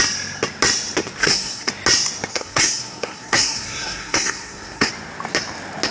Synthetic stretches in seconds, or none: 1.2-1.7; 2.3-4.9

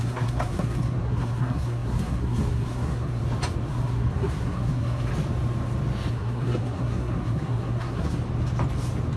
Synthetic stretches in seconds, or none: 0.0-3.2; 3.7-5.1; 6.1-8.2

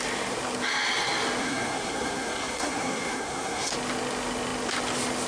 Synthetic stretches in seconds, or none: 1.4-3.7